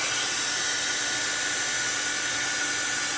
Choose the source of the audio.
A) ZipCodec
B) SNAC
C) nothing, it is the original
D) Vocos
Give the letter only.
C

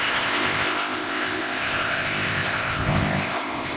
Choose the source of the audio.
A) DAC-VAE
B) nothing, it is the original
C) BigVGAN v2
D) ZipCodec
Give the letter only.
D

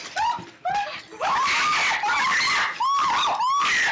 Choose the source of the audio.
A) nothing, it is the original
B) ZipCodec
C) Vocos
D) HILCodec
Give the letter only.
A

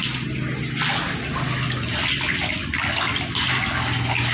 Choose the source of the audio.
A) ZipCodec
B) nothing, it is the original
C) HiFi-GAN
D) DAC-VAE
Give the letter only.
B